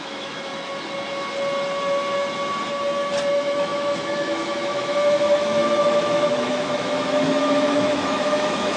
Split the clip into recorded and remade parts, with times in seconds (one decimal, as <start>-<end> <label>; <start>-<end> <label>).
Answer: 0.0-0.5 remade; 0.5-3.3 recorded; 3.3-8.8 remade